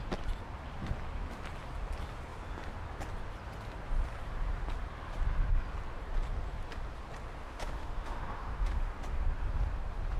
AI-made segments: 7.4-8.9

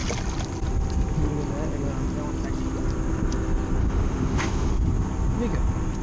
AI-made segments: 3.8-4.7